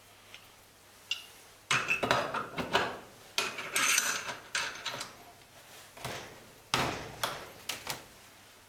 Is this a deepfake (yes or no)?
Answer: no